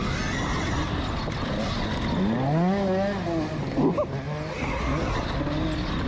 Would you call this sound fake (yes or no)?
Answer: no